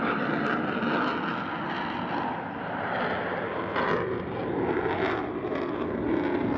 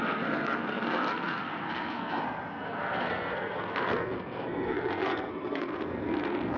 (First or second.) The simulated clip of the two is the second